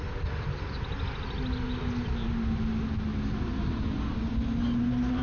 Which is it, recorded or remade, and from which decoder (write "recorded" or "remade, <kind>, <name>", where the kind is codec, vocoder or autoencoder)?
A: recorded